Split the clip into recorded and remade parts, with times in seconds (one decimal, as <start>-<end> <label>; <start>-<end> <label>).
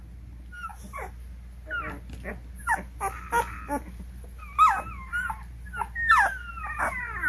0.0-7.3 recorded